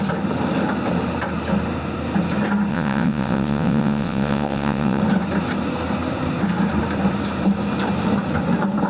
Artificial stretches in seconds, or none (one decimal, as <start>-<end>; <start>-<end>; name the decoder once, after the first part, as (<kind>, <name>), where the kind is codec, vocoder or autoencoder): 2.7-5.0 (vocoder, WaveNeXt)